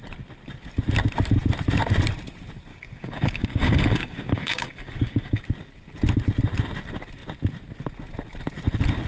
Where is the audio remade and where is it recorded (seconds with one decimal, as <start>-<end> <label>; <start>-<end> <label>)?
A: 0.0-2.7 recorded; 2.7-5.4 remade; 5.4-9.1 recorded